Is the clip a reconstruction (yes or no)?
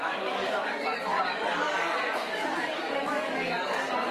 yes